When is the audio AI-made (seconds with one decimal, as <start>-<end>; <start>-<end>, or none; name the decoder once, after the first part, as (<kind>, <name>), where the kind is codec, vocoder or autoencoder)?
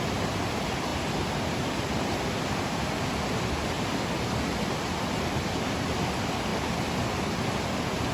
none